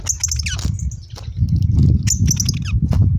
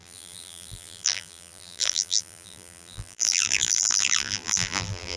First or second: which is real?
first